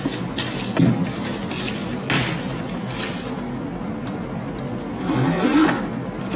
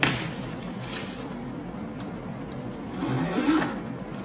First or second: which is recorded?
first